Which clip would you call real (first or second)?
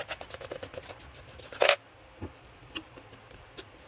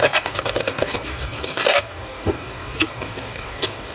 first